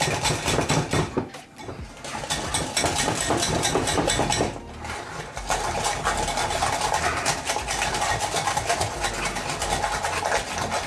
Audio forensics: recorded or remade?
recorded